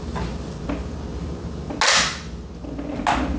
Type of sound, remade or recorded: recorded